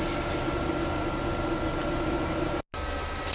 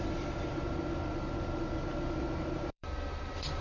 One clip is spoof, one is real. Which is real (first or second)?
first